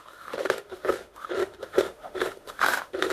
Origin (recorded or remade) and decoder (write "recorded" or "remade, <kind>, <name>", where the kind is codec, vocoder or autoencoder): remade, autoencoder, DAC-VAE